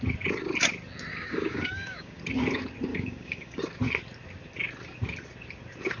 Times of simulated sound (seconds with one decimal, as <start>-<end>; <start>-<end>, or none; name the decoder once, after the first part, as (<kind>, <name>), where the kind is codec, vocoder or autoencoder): 1.1-2.2 (codec, DAC); 2.9-3.6